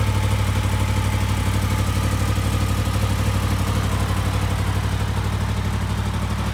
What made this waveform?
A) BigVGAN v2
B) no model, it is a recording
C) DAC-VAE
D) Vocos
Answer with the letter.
B